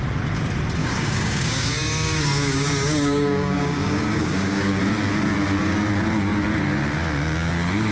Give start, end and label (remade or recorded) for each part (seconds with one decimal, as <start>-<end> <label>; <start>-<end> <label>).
0.0-0.8 recorded; 0.8-4.8 remade; 4.8-7.9 recorded